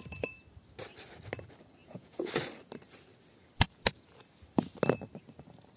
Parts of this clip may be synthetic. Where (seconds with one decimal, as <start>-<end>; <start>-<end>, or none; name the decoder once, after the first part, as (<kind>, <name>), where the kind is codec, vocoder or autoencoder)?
1.8-2.3 (vocoder, Vocos)